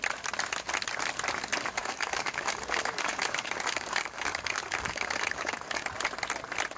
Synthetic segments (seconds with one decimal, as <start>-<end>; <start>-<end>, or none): 1.8-5.9